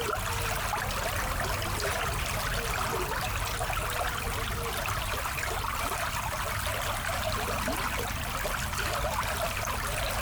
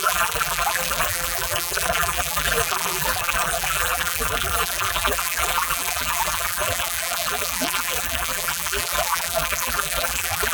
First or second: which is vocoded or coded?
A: second